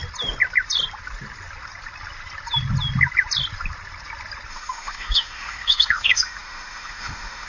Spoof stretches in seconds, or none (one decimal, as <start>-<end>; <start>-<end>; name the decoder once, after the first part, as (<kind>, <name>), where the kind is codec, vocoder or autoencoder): 4.5-7.5 (autoencoder, DAC-VAE)

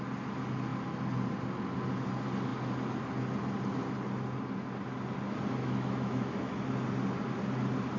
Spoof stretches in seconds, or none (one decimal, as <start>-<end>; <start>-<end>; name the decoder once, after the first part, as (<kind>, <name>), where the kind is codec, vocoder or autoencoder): 5.6-6.6 (autoencoder, DAC-VAE)

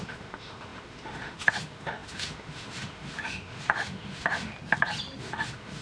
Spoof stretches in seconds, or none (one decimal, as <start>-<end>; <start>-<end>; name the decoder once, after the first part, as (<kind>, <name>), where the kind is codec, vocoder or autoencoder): 0.0-4.5 (autoencoder, DAC-VAE); 5.2-5.8

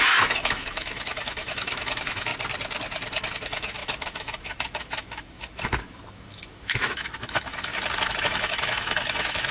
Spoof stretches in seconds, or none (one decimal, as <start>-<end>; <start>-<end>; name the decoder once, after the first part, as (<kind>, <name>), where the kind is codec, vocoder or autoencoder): 0.0-2.3 (autoencoder, DAC-VAE); 3.3-7.7; 8.2-9.5

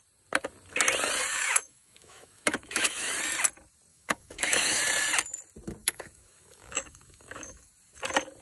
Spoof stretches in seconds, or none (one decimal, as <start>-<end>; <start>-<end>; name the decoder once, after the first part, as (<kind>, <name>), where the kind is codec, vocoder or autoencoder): 1.3-3.1 (autoencoder, DAC-VAE); 3.9-4.8; 5.8-7.7

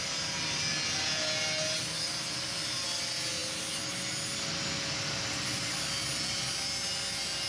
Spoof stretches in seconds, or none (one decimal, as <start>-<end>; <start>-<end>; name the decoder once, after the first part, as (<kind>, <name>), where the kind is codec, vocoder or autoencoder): none